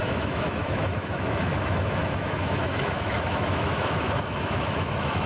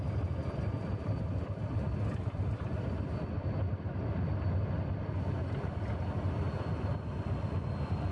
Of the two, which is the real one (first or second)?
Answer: second